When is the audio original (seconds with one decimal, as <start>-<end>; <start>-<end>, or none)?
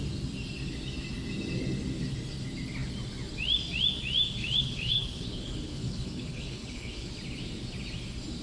0.0-4.4; 7.1-8.4